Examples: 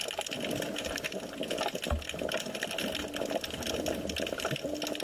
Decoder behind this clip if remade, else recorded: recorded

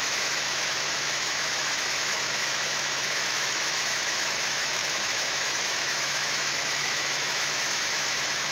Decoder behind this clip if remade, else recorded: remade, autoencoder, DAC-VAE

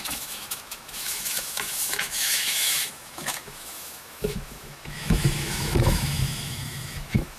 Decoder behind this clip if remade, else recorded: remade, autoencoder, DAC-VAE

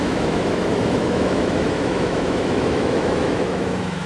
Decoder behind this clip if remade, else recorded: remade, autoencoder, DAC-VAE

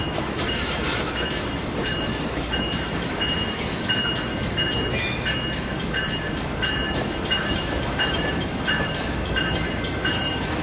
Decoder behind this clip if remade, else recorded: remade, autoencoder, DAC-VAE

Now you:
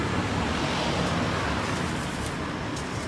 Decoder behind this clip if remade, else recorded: recorded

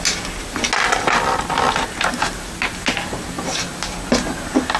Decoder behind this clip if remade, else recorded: recorded